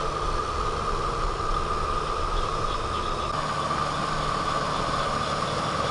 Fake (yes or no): no